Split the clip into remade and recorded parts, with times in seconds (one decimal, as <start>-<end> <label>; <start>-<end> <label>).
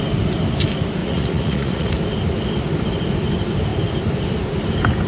0.0-1.0 recorded; 1.0-1.9 remade; 1.9-5.1 recorded